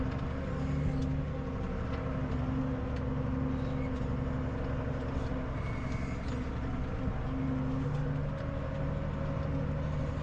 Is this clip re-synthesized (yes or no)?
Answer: no